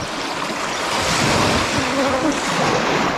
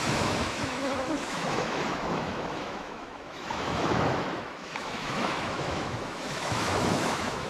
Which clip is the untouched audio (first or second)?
first